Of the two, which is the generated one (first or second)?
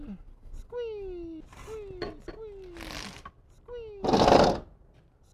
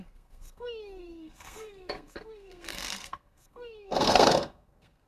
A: second